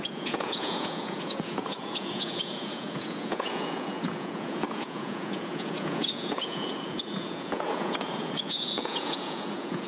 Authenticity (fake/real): fake